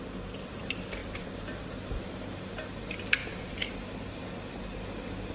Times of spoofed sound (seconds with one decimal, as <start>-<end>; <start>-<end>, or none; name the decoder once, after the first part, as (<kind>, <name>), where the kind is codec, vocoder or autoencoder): 1.0-2.5 (vocoder, BigVGAN v2); 3.2-4.2